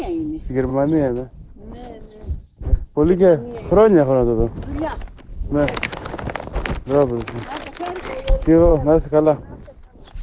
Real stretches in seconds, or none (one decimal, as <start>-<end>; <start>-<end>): 0.0-5.3; 6.1-8.7; 9.4-10.2

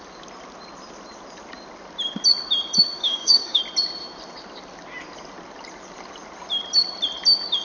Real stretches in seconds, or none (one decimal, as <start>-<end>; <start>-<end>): 0.0-3.0; 3.6-7.6

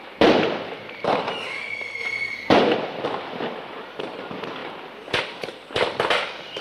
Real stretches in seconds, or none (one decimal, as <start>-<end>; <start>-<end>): 0.0-6.6

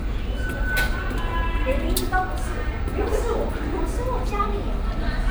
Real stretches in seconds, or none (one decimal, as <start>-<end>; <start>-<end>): 0.0-5.3

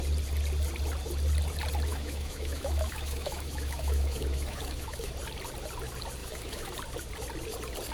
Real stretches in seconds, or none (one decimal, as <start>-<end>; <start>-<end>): 0.0-1.9; 5.1-6.2; 6.7-7.9